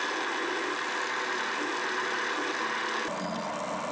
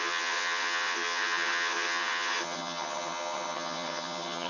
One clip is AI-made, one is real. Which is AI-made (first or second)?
second